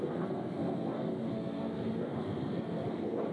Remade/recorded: remade